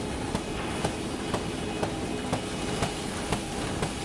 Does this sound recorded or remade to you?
recorded